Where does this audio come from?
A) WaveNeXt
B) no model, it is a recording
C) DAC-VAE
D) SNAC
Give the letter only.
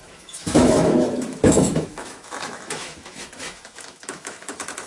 C